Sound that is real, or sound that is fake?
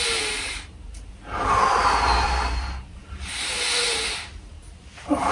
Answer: fake